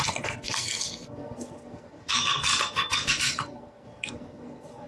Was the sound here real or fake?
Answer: fake